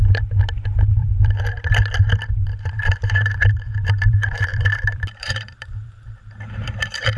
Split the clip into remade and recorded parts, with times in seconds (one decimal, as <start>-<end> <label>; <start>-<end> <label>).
0.0-2.4 recorded; 2.4-6.7 remade; 6.7-7.2 recorded